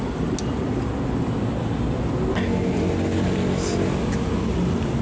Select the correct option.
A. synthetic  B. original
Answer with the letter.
B